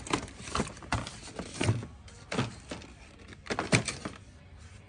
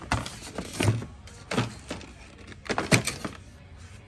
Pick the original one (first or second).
second